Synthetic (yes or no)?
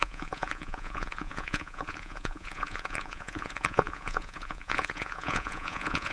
yes